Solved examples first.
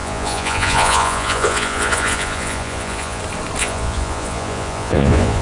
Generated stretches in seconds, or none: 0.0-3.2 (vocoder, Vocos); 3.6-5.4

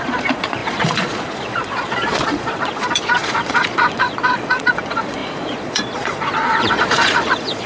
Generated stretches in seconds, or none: 0.0-7.7 (vocoder, Vocos)

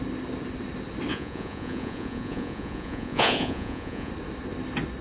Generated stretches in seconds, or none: 1.1-4.1 (vocoder, Vocos)